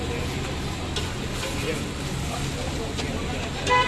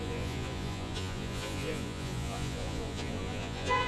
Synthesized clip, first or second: second